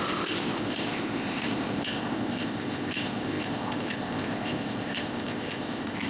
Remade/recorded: remade